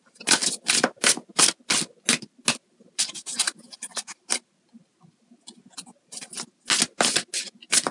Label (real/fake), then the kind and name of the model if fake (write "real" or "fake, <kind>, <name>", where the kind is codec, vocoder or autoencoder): real